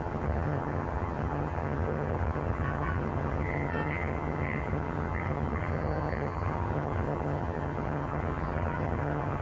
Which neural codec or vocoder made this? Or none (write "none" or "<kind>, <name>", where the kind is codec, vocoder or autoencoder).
vocoder, HiFi-GAN